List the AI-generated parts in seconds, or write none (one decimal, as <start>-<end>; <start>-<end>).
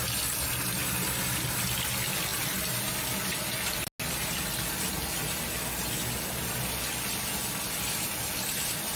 none